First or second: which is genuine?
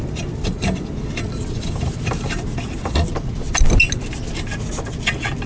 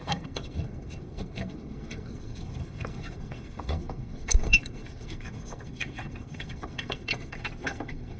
first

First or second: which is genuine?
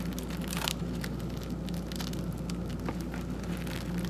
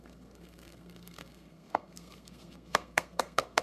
first